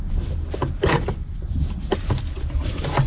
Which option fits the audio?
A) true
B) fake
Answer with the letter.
B